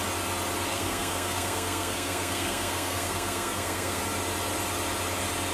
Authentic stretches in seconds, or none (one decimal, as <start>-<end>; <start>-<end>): 0.0-0.7; 4.0-5.5